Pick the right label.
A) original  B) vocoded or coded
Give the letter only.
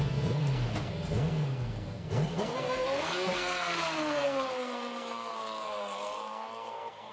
B